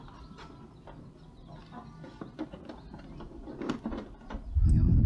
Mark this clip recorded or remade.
recorded